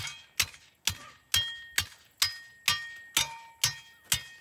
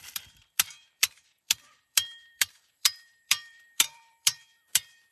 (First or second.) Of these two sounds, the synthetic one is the second